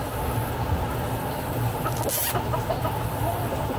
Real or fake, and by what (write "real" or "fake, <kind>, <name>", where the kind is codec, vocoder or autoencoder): real